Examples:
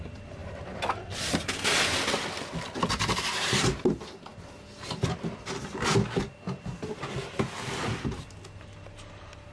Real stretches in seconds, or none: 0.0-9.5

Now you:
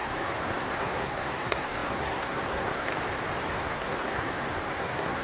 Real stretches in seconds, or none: 2.9-3.5

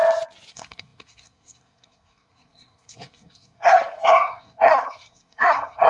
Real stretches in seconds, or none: 0.0-0.5

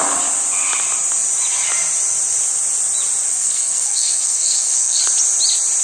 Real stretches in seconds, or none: 0.0-3.3; 5.0-5.8

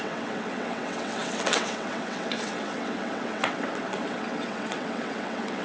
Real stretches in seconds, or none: none

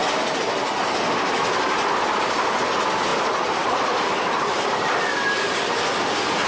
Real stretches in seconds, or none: 0.0-3.1; 6.0-6.5

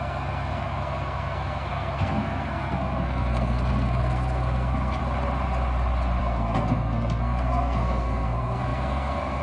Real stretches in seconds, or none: 5.0-6.2